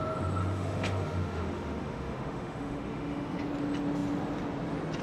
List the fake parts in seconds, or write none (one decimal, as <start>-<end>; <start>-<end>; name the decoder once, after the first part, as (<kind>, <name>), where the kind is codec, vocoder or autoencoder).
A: 0.4-3.4 (autoencoder, DAC-VAE)